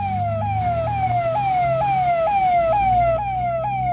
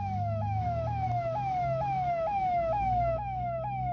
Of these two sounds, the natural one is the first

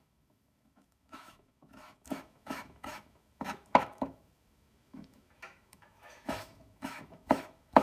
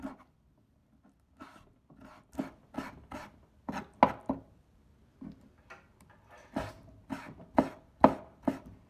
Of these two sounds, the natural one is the second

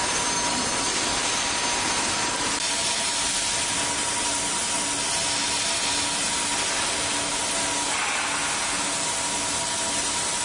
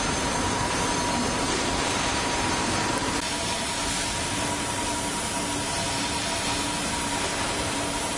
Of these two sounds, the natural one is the first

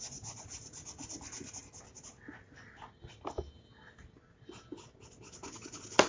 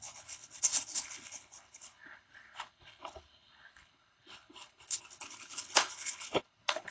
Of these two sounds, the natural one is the first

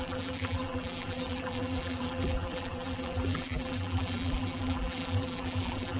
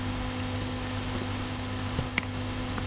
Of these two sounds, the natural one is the second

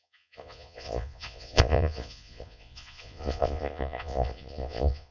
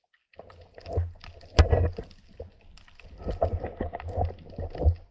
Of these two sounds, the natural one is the second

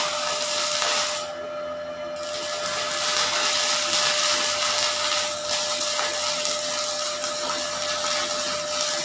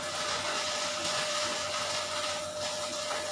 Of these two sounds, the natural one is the first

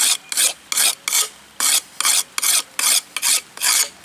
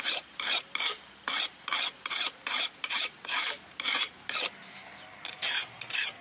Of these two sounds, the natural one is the first